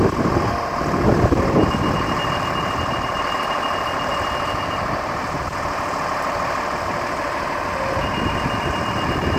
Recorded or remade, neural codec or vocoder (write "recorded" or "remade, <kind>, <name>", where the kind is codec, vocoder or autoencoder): recorded